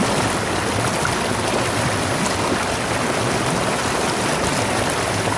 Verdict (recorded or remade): recorded